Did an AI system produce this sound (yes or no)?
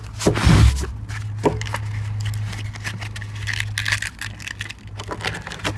no